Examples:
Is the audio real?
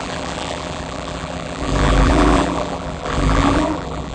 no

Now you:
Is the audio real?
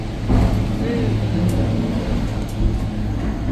yes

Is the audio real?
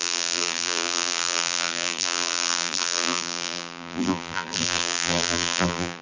no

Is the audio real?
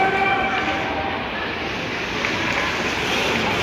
yes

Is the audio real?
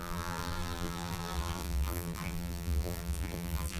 no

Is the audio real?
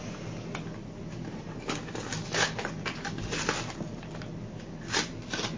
yes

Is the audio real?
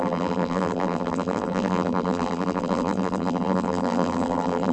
no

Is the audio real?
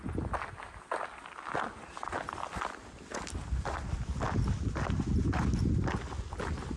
yes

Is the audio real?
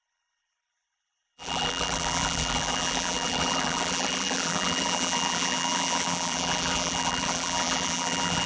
no